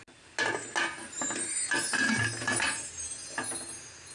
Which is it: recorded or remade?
recorded